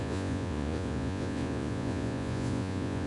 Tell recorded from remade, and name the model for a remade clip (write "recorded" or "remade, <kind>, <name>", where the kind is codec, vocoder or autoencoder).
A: remade, vocoder, Vocos